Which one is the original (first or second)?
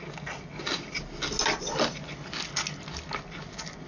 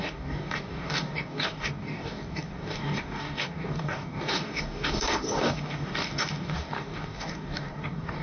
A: first